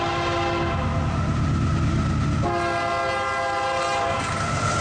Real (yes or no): yes